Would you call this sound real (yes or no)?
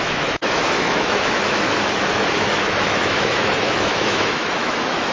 no